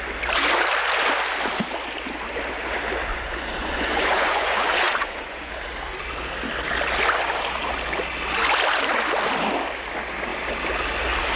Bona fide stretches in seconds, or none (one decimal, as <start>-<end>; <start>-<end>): 0.0-3.1; 5.5-11.4